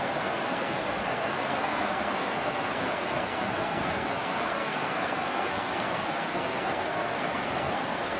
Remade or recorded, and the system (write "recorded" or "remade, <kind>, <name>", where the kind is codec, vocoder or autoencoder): remade, codec, SNAC